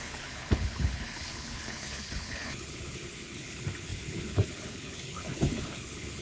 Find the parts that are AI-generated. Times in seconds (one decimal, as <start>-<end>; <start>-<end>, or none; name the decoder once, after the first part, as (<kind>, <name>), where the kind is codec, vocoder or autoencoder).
0.0-6.2 (codec, HILCodec)